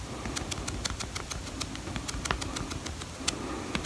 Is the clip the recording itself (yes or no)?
yes